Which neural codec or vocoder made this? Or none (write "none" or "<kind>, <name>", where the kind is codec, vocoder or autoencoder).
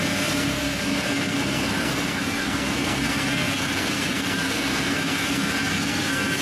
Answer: codec, SNAC